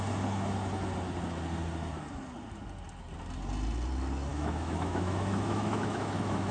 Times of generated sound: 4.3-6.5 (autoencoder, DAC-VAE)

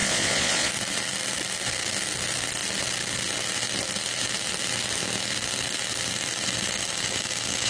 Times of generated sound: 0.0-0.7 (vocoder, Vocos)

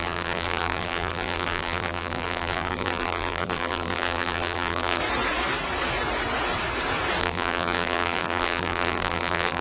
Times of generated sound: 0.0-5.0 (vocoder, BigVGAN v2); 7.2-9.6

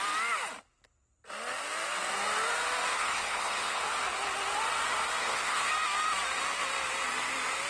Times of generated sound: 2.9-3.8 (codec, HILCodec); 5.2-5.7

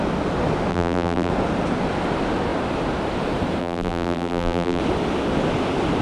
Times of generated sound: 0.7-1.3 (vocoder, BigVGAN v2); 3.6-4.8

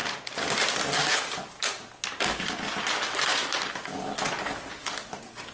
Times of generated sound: none

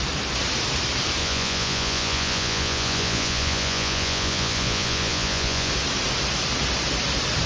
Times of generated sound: 1.2-5.7 (vocoder, Vocos)